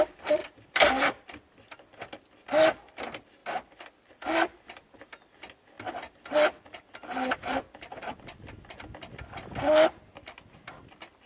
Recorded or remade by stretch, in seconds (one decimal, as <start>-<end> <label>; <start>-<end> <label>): 0.0-0.4 recorded; 0.4-1.5 remade; 1.5-11.3 recorded